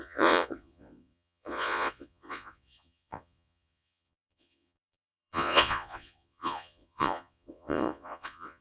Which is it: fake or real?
fake